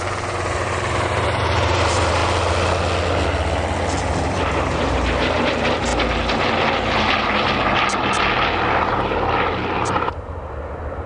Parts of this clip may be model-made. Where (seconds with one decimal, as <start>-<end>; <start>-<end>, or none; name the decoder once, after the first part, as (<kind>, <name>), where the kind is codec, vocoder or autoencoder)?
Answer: 0.0-2.2 (vocoder, BigVGAN v2); 4.0-5.9; 9.9-11.1